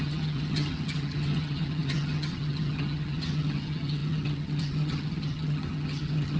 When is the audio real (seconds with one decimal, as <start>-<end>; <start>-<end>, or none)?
none